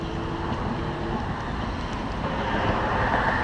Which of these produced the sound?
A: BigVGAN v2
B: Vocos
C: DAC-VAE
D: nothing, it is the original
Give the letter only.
D